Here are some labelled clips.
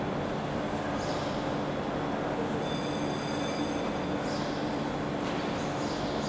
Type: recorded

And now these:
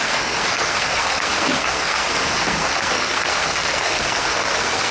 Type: remade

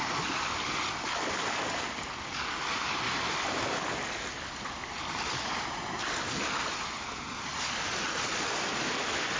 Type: recorded